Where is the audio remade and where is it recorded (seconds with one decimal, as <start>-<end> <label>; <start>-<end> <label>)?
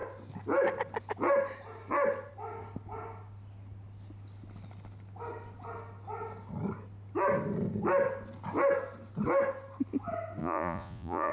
0.0-10.4 recorded; 10.4-11.3 remade